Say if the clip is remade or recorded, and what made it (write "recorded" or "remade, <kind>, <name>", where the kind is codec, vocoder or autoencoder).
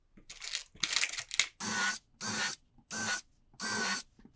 recorded